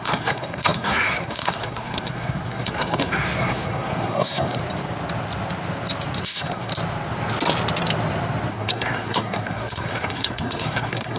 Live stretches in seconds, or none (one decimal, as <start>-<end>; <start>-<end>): 4.6-6.2; 6.7-8.5